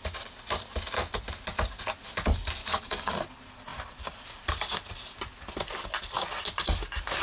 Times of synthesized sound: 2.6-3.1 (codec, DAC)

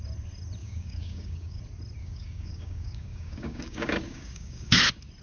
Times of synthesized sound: 0.6-1.6 (codec, DAC); 2.0-4.8

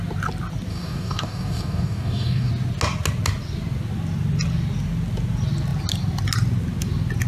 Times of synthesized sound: 0.7-2.5 (codec, DAC)

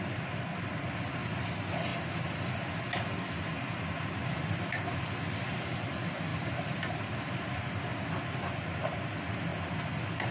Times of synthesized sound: none

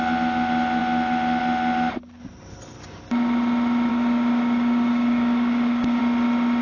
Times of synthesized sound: 3.9-6.0 (codec, DAC)